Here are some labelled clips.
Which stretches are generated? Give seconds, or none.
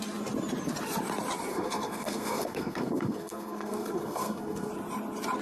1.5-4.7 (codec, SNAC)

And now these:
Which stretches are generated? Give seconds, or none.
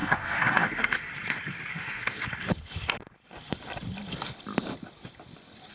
0.0-1.1 (codec, SNAC); 1.7-2.2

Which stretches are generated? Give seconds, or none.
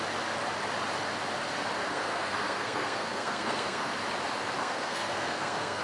1.8-3.9 (codec, SNAC); 4.6-5.8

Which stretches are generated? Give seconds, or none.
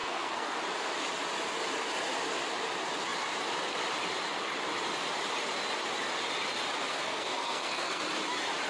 0.0-0.6 (codec, SNAC); 6.9-8.0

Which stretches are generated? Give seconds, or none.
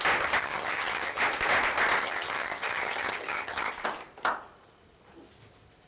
0.4-1.2 (vocoder, HiFi-GAN); 2.0-3.7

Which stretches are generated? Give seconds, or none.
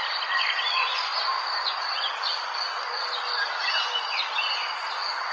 none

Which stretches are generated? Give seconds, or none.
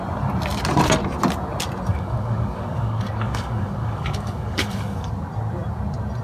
1.9-5.1 (codec, DAC)